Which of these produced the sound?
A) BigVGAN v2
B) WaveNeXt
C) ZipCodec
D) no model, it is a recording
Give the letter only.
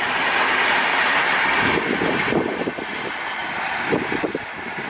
D